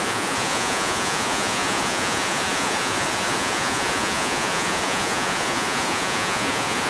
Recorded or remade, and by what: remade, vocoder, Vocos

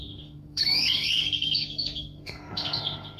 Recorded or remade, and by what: remade, codec, SNAC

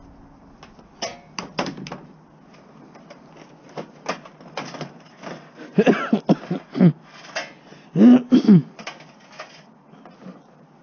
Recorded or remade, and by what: recorded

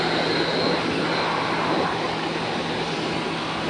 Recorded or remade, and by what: recorded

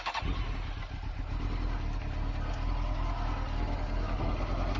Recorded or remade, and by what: recorded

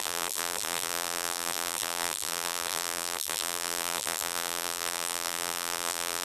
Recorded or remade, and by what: remade, vocoder, BigVGAN v2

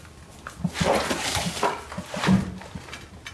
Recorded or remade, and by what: recorded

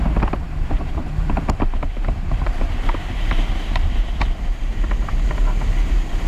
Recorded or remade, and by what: remade, vocoder, BigVGAN v2